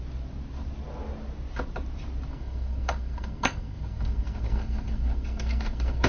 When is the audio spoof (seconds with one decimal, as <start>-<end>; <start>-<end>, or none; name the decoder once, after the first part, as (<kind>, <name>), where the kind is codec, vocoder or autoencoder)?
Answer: 2.3-6.1 (codec, SNAC)